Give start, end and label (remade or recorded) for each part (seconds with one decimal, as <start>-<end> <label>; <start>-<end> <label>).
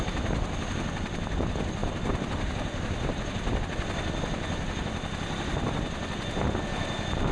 0.0-1.8 recorded; 1.8-3.6 remade; 3.6-7.3 recorded